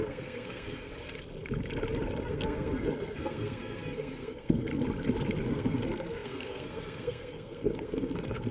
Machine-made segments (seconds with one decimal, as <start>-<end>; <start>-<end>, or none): 0.0-0.9; 2.2-4.7; 5.4-8.5